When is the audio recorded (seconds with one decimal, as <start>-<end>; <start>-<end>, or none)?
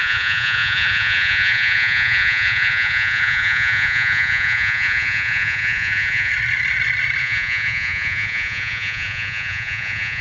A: 6.3-7.2